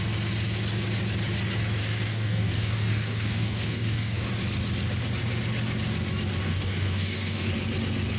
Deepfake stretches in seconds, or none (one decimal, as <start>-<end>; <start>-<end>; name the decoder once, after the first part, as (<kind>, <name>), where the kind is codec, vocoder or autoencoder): 1.8-4.3 (codec, DAC); 6.5-7.5